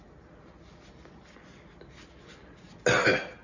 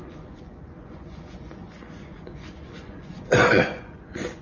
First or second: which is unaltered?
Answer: first